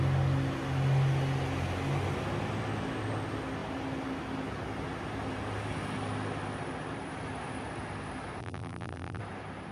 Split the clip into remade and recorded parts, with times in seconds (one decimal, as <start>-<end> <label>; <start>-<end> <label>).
0.0-8.4 recorded; 8.4-9.2 remade; 9.2-9.7 recorded